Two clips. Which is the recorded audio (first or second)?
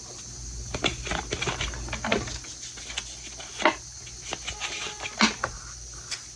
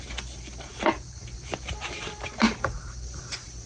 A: first